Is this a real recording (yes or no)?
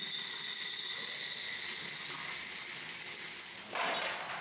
yes